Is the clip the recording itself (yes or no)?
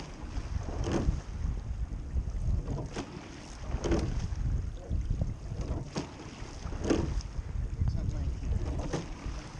yes